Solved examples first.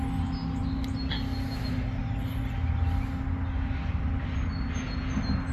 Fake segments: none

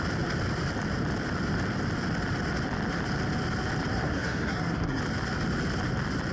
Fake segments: 3.9-5.0 (codec, SNAC)